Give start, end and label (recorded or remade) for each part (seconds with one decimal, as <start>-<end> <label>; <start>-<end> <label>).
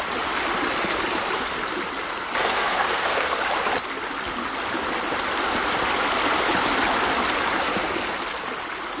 0.0-2.4 recorded; 2.4-3.4 remade; 3.4-9.0 recorded